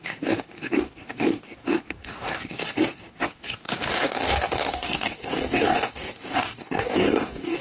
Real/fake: fake